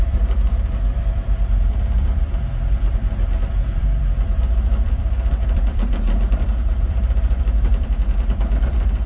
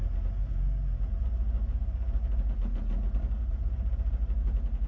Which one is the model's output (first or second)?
first